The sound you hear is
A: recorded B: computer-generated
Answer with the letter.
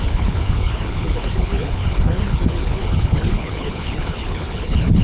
B